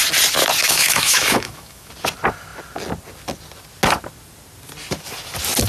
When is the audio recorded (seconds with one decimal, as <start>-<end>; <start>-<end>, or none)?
0.0-0.6; 1.9-5.7